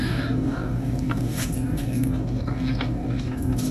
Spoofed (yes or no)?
yes